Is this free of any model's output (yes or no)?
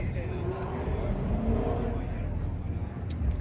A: no